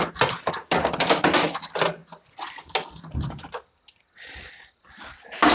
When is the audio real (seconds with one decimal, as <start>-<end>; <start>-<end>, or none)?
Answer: 0.0-5.5

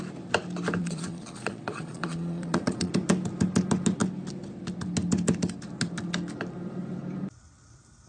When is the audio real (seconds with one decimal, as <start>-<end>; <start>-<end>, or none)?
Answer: 0.0-0.8; 2.9-8.1

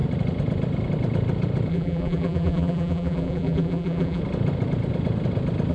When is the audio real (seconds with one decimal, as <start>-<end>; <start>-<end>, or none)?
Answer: 0.0-1.7; 4.2-5.7

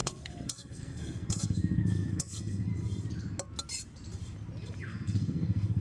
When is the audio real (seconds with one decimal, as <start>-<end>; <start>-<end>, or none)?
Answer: 2.7-4.8

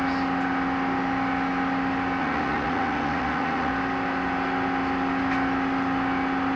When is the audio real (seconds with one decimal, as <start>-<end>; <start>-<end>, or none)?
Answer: 0.0-2.2; 3.7-6.6